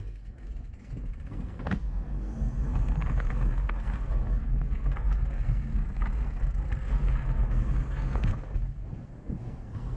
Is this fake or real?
fake